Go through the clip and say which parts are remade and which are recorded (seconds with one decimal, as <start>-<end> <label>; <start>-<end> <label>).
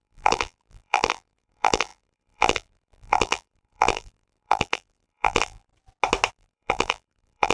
0.0-5.7 remade; 5.7-6.3 recorded; 6.3-7.5 remade